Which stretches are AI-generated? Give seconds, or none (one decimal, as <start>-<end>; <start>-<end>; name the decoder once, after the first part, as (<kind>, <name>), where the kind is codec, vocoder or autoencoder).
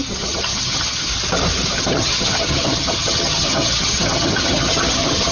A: 0.0-1.1 (vocoder, HiFi-GAN); 1.8-5.3